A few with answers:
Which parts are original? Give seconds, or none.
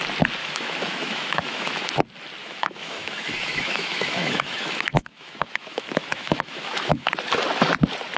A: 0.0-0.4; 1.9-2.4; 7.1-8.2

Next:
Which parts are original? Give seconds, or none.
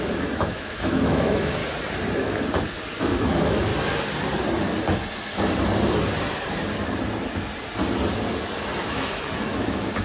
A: 1.6-3.0; 3.7-8.9